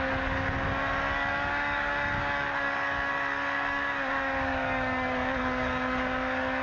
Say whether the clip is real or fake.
fake